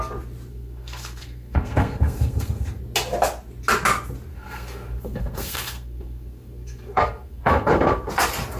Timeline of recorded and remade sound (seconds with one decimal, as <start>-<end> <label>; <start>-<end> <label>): 0.0-0.5 recorded; 0.5-2.7 remade; 2.7-4.3 recorded; 4.3-8.1 remade; 8.1-8.6 recorded